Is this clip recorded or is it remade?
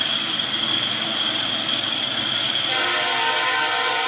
recorded